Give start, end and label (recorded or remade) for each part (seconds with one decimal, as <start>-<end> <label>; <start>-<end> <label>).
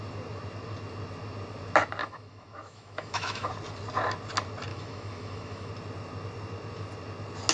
0.0-2.0 recorded; 2.0-3.5 remade; 3.5-4.7 recorded; 4.7-5.7 remade; 5.7-7.5 recorded